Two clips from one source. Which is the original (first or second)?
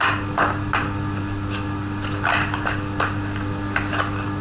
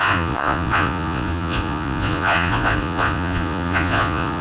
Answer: first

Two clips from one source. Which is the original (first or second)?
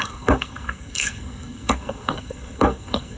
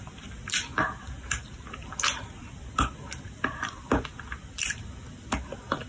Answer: second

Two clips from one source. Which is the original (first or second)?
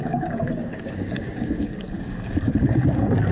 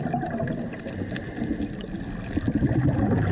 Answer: second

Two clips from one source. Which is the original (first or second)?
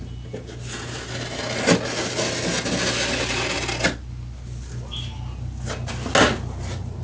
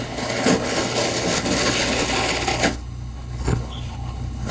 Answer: first